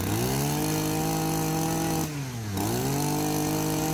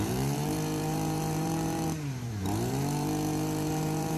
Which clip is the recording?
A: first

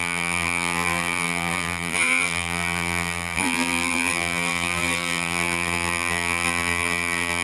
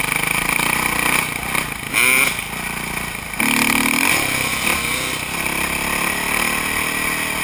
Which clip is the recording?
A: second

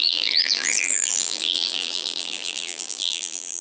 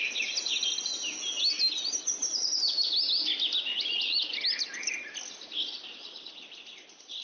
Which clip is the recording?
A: second